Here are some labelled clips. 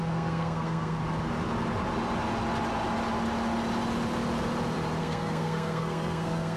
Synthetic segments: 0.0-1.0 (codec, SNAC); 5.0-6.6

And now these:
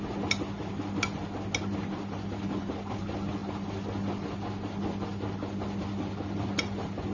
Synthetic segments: none